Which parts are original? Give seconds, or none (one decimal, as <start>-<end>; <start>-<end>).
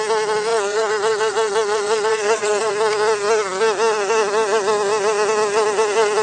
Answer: 0.0-0.5; 2.7-6.2